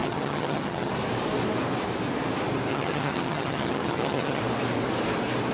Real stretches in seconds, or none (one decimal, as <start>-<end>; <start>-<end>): 0.9-2.7; 4.4-5.5